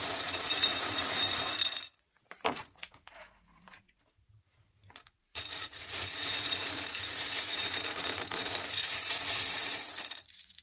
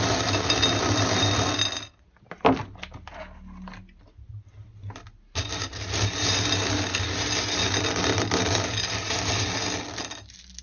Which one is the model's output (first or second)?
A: first